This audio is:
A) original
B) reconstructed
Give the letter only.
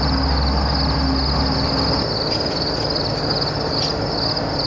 A